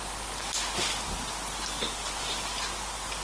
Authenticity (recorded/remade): recorded